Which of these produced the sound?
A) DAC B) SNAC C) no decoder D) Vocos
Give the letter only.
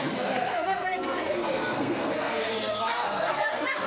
B